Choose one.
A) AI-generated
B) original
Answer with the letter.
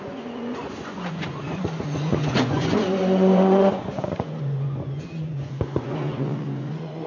A